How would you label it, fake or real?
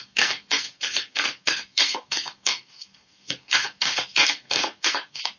fake